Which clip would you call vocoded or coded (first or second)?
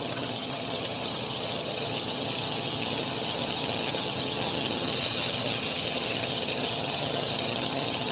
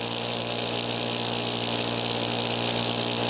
first